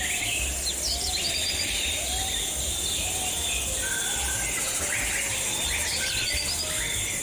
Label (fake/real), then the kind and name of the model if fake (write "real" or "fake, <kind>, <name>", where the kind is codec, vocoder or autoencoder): real